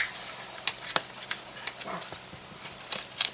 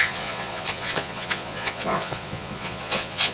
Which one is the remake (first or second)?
second